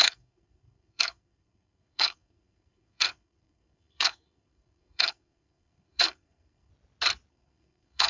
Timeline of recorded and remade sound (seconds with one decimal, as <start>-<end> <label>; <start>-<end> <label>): 0.0-6.7 remade; 6.7-7.3 recorded; 7.3-8.1 remade